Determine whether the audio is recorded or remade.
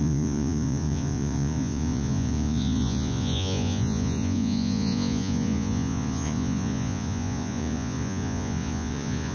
remade